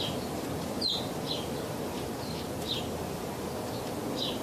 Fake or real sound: real